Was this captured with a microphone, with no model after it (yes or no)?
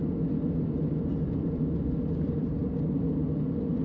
yes